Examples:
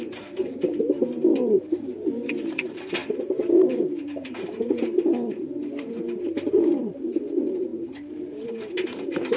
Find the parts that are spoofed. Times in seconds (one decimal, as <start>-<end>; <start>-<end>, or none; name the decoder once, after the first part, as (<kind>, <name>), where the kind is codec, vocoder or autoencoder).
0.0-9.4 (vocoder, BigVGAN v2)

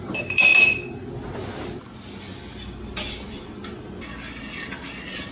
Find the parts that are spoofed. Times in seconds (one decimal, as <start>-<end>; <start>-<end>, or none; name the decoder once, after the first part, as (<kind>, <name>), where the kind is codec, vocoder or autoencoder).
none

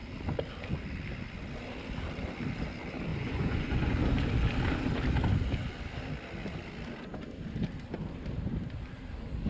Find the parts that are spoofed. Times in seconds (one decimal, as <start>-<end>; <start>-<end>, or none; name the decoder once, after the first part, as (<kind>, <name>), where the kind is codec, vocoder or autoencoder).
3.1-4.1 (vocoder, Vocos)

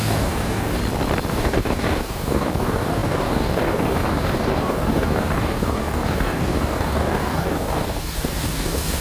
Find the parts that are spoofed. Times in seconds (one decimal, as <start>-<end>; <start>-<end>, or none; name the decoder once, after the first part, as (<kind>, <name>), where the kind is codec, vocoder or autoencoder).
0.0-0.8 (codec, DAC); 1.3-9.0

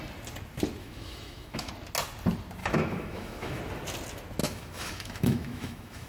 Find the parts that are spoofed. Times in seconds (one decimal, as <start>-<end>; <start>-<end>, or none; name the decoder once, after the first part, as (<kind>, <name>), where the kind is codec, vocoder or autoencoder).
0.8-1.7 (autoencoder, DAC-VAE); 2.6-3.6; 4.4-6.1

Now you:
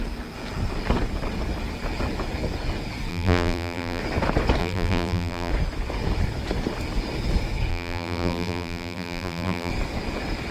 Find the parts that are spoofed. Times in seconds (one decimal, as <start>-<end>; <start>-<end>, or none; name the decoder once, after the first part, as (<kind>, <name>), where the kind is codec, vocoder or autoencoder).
3.1-4.0 (vocoder, BigVGAN v2); 4.6-5.5; 7.7-9.7